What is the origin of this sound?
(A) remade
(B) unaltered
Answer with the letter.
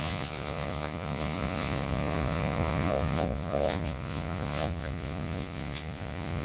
A